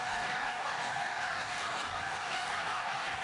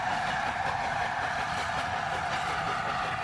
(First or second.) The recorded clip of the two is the second